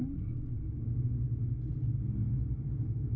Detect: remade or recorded recorded